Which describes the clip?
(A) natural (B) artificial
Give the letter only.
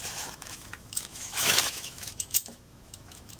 B